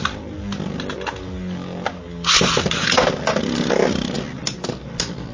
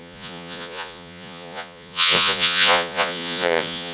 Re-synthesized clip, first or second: second